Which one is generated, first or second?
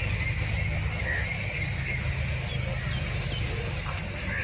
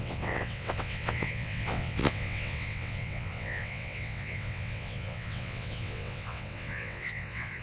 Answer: second